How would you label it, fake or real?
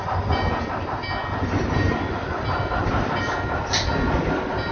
real